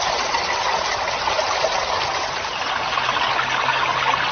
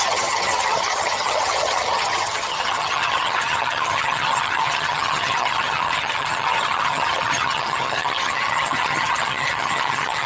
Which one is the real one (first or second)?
first